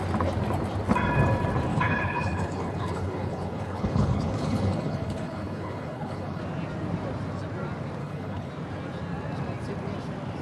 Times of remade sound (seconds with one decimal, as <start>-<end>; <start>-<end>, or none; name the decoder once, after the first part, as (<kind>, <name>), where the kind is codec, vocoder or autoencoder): 1.7-6.4 (codec, HILCodec); 8.0-8.5